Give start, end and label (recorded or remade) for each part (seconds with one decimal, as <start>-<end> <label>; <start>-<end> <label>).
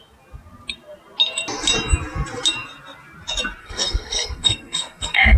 0.0-3.6 recorded; 3.6-5.4 remade